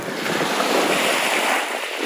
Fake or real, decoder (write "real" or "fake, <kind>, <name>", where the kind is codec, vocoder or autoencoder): real